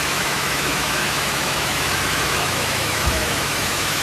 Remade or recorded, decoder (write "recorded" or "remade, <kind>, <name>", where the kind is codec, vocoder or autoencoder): remade, autoencoder, DAC-VAE